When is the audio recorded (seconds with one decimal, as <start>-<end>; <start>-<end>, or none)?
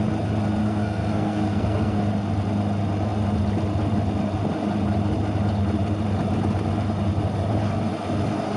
0.0-0.6; 2.0-8.6